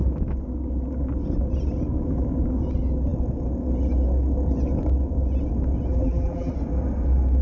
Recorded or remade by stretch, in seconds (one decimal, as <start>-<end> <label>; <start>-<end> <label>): 0.0-5.9 recorded; 5.9-6.5 remade; 6.5-7.4 recorded